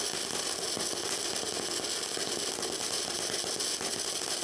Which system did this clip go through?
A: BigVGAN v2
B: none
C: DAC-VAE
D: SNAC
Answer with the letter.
B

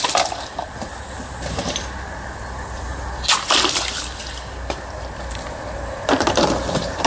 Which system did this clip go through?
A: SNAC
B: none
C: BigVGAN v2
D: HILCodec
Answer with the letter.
B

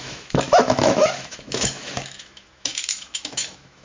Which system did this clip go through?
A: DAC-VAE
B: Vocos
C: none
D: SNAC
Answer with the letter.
A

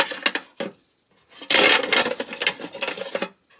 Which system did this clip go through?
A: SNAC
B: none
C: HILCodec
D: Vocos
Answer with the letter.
B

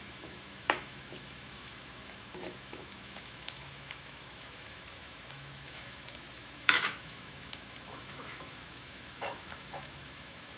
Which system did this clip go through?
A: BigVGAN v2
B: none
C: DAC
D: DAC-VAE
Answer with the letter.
D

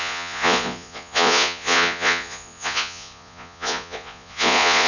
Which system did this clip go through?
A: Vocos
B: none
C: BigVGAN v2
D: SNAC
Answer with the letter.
A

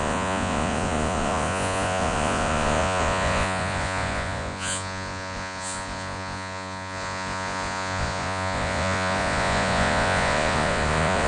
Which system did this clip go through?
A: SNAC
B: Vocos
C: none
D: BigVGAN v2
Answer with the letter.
B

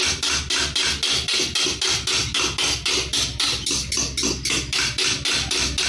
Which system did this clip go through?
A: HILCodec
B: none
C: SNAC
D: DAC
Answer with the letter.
B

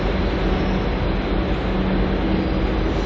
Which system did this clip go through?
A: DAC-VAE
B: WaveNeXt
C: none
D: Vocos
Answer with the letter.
C